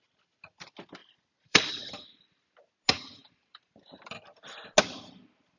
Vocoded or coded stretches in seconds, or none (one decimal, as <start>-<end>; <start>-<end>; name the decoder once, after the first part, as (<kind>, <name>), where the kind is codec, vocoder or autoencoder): 1.0-2.4 (vocoder, BigVGAN v2)